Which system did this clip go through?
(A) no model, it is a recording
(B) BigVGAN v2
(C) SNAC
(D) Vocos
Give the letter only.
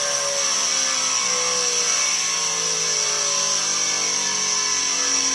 A